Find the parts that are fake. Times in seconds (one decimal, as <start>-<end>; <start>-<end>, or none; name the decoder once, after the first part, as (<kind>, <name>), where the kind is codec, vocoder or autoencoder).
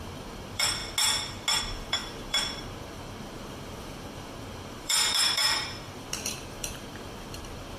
0.0-0.8 (vocoder, BigVGAN v2); 1.6-7.8